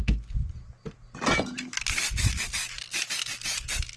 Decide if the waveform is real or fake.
real